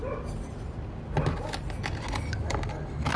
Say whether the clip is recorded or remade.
recorded